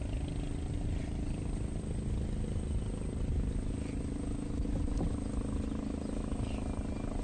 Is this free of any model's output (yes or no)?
yes